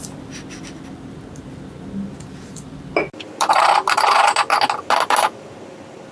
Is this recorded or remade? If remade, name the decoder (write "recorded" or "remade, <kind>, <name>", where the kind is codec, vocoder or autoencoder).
recorded